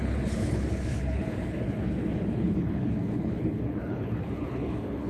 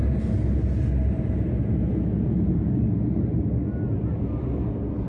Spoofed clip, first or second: first